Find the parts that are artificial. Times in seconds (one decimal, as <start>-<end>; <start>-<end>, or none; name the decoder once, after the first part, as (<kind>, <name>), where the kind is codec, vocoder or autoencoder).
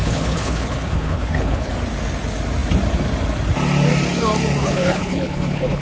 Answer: 0.0-1.7 (codec, HILCodec); 4.6-5.8